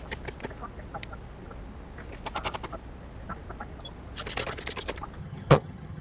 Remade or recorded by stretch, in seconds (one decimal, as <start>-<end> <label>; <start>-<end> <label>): 0.0-5.2 recorded; 5.2-6.0 remade